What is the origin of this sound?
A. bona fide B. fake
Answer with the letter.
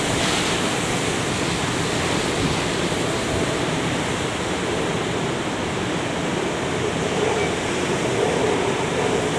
A